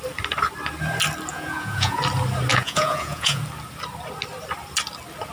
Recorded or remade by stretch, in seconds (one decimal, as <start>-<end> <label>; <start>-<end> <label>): 0.0-1.3 recorded; 1.3-2.0 remade; 2.0-2.5 recorded; 2.5-3.4 remade; 3.4-5.3 recorded